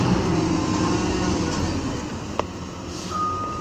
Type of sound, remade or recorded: recorded